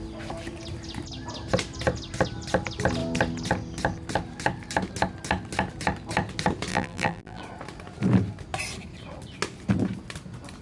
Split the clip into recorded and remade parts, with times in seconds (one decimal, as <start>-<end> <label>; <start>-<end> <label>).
0.0-6.7 recorded; 6.7-7.4 remade; 7.4-10.6 recorded